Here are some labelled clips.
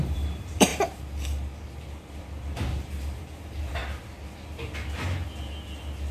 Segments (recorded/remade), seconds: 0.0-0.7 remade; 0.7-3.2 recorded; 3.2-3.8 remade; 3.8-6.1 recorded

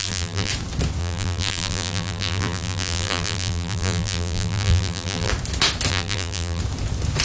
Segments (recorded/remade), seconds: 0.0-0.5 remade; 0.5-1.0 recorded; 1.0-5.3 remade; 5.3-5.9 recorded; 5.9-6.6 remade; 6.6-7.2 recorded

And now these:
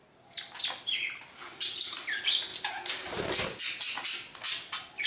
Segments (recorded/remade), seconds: 0.0-5.1 recorded

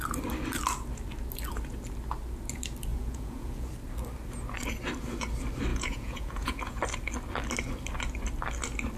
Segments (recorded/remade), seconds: 0.0-2.9 recorded; 2.9-3.7 remade; 3.7-5.7 recorded; 5.7-6.8 remade; 6.8-9.0 recorded